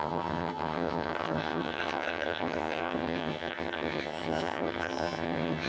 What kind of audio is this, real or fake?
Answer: fake